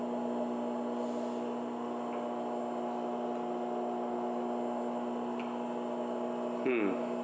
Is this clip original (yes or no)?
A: yes